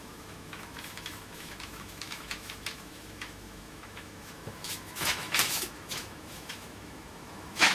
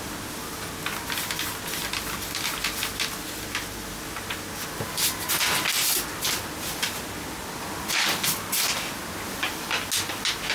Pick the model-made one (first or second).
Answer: first